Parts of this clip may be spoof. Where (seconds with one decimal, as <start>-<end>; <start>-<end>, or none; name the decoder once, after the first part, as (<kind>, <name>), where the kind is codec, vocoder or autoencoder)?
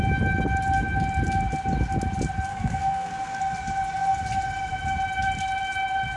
2.5-3.4 (codec, SNAC)